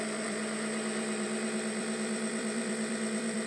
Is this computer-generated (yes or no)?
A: yes